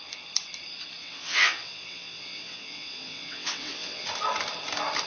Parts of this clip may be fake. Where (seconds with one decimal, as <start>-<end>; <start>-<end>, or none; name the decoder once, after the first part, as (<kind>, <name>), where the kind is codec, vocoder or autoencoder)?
1.0-4.1 (vocoder, WaveNeXt)

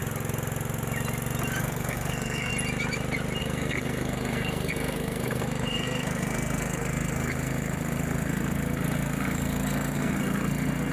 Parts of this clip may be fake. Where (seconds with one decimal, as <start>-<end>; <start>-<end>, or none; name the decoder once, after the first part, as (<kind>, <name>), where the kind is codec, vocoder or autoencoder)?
1.6-2.5 (codec, SNAC); 3.4-10.9